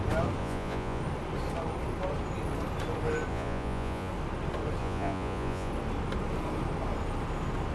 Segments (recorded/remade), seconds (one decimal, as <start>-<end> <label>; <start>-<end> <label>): 0.0-0.4 recorded; 0.4-1.0 remade; 1.0-3.3 recorded; 3.3-4.1 remade; 4.1-4.8 recorded; 4.8-5.7 remade; 5.7-7.7 recorded